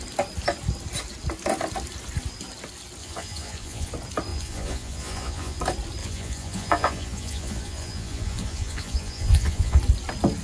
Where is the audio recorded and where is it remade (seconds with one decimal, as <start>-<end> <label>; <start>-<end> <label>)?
0.0-3.0 recorded; 3.0-3.9 remade; 3.9-4.3 recorded; 4.3-5.6 remade; 5.6-6.0 recorded; 6.0-9.8 remade; 9.8-10.4 recorded